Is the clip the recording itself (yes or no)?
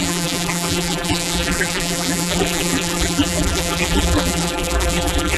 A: no